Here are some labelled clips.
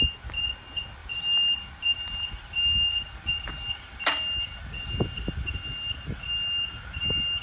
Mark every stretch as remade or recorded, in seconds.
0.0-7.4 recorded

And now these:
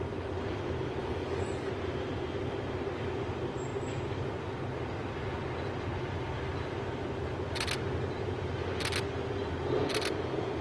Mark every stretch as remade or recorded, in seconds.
0.0-1.0 recorded; 1.0-1.7 remade; 1.7-10.6 recorded